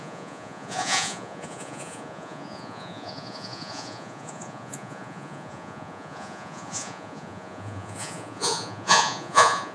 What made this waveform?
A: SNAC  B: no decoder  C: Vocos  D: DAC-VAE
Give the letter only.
C